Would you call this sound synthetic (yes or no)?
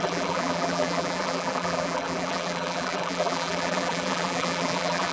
yes